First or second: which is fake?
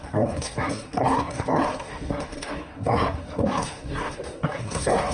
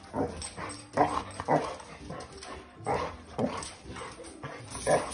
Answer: first